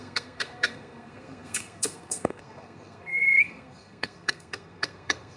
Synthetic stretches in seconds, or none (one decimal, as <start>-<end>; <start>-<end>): 0.0-5.4